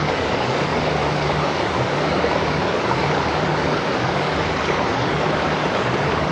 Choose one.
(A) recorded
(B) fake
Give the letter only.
B